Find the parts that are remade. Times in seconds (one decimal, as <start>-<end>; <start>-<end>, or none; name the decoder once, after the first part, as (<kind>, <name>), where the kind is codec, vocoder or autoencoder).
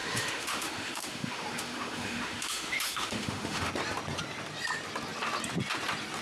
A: 0.0-3.7 (autoencoder, DAC-VAE)